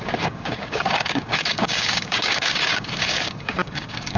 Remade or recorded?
remade